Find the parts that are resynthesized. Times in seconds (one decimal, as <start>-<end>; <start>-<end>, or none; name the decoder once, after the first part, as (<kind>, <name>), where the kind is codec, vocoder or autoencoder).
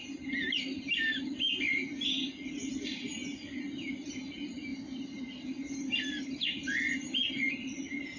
none